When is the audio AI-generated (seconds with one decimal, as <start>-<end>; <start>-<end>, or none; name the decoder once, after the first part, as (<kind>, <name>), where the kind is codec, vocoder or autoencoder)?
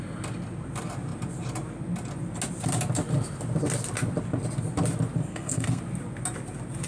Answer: 5.3-5.8 (codec, SNAC)